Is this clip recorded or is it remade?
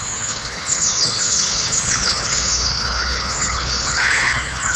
remade